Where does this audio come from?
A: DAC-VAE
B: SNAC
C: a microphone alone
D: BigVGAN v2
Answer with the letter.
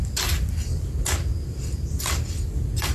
C